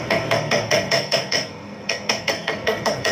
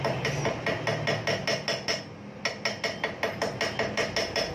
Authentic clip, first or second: second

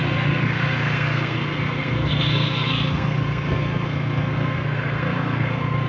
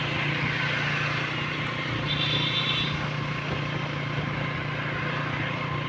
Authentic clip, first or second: second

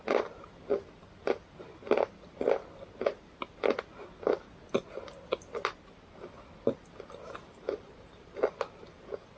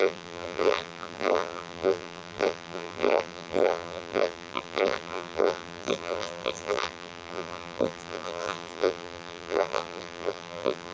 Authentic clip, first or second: first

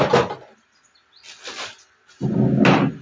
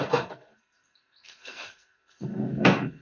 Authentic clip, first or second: first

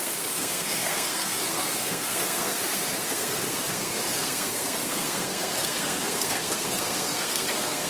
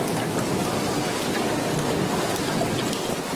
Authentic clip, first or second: second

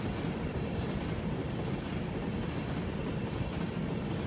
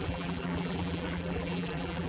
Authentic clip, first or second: first